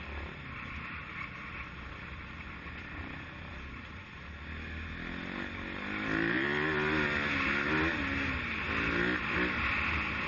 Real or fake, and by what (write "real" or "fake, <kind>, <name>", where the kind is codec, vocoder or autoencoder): real